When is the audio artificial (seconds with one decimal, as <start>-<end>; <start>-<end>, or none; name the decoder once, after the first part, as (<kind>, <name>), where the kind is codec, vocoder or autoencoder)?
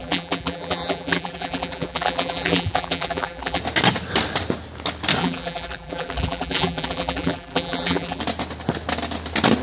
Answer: 0.0-3.6 (vocoder, BigVGAN v2); 5.2-8.2